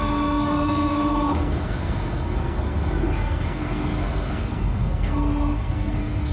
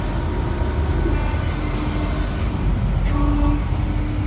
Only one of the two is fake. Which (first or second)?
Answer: first